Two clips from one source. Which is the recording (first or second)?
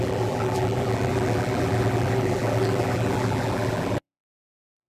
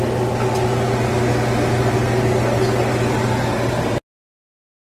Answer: second